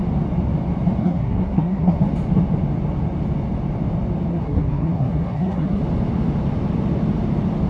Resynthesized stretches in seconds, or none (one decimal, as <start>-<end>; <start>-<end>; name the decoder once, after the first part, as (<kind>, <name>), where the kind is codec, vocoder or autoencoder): 1.0-2.0 (codec, SNAC); 4.3-5.8